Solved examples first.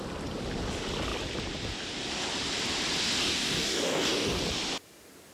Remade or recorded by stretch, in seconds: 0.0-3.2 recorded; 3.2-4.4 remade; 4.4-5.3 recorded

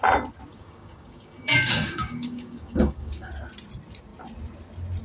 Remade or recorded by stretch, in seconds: 0.0-0.5 recorded; 0.5-3.3 remade; 3.3-5.0 recorded